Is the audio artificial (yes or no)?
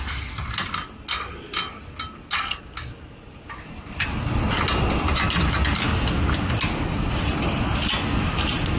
no